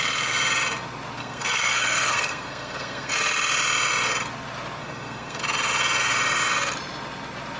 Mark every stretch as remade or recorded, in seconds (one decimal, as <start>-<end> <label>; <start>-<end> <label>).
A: 0.0-1.2 recorded; 1.2-3.1 remade; 3.1-4.8 recorded; 4.8-5.4 remade; 5.4-7.6 recorded